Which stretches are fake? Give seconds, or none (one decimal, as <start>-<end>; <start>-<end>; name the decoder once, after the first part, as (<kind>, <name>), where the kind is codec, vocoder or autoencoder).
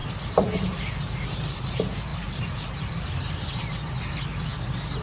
0.0-1.3 (vocoder, BigVGAN v2); 2.1-3.3